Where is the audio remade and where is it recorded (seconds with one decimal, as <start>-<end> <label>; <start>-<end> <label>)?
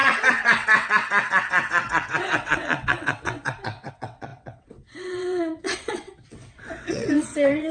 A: 0.0-7.7 remade